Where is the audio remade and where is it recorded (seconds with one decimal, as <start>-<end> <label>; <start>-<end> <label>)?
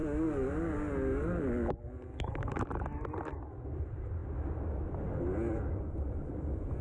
0.0-6.8 recorded